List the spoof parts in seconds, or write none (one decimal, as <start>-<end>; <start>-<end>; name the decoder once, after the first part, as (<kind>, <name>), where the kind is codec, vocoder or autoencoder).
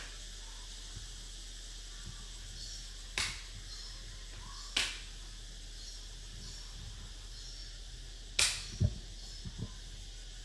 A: none